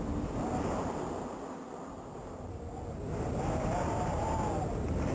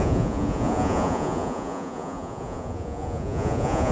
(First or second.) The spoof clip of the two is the second